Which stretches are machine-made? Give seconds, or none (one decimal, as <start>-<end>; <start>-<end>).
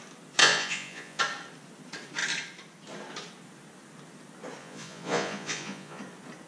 0.4-1.2; 4.6-6.0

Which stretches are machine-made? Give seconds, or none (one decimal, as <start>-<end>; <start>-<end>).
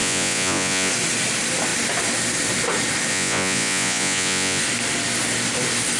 0.0-0.9; 3.1-4.6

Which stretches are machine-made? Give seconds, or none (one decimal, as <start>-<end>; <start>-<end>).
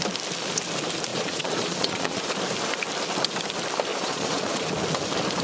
1.1-2.2; 3.9-4.7